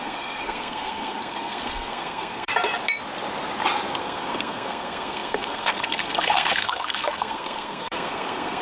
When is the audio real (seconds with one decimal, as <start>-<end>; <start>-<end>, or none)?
2.5-4.0